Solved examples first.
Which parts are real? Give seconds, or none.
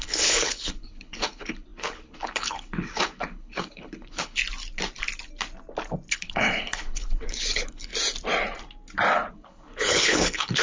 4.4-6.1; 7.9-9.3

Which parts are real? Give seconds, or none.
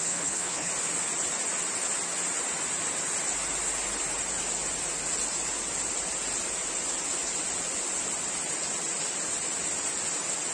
0.7-10.5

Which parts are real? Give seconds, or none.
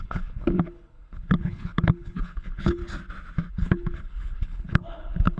2.8-3.5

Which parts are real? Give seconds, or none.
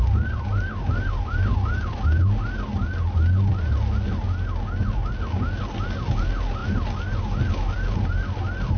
0.0-8.8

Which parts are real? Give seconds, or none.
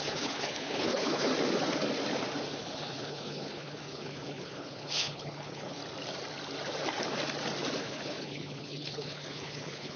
1.3-2.6; 5.8-7.8